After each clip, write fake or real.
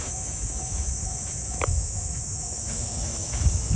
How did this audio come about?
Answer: fake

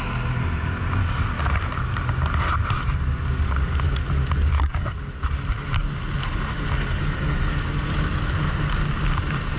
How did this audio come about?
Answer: real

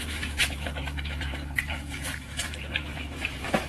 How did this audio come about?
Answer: fake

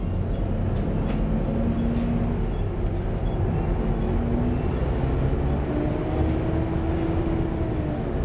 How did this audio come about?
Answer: real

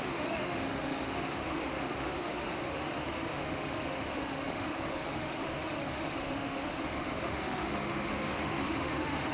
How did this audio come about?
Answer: fake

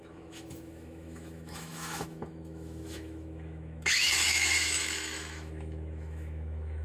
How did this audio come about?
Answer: fake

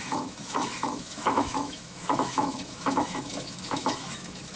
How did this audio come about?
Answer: fake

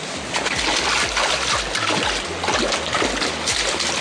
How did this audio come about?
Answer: real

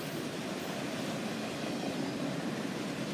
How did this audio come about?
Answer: real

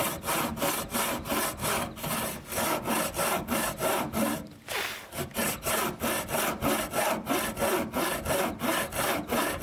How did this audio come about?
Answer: real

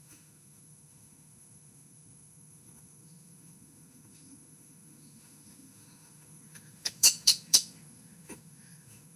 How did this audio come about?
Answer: fake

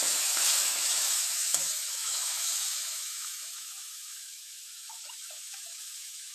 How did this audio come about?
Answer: fake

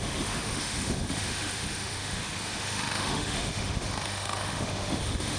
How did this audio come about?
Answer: fake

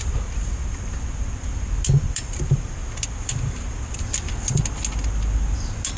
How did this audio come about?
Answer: real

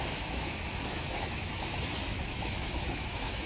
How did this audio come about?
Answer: fake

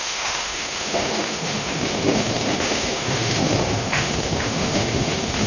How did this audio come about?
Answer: fake